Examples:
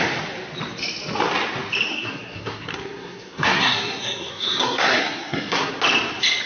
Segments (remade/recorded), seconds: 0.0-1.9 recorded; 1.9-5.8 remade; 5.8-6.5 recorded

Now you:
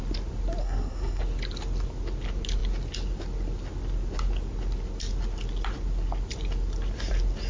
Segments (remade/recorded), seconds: 0.0-0.6 recorded; 0.6-1.2 remade; 1.2-7.5 recorded

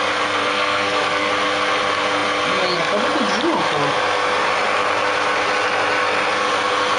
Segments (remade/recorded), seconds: 0.0-0.4 recorded; 0.4-1.3 remade; 1.3-7.0 recorded

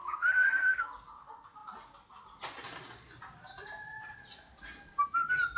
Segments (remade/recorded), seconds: 0.0-0.8 remade; 0.8-5.6 recorded

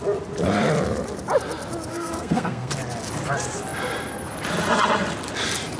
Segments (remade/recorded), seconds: 0.0-1.9 recorded; 1.9-2.7 remade; 2.7-5.8 recorded

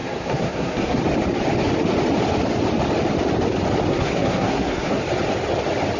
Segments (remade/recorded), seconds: 0.0-1.0 remade; 1.0-3.9 recorded; 3.9-5.0 remade; 5.0-6.0 recorded

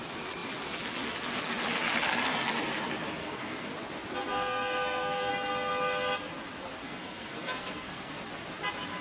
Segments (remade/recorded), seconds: 0.0-3.2 recorded; 3.2-3.7 remade; 3.7-4.3 recorded; 4.3-5.3 remade; 5.3-6.8 recorded; 6.8-8.2 remade; 8.2-9.0 recorded

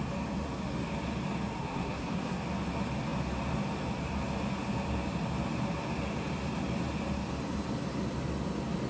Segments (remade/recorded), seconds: 0.0-1.6 recorded; 1.6-2.4 remade; 2.4-8.9 recorded